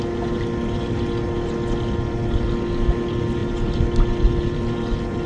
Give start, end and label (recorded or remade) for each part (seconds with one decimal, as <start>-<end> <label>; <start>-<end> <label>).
0.0-5.3 recorded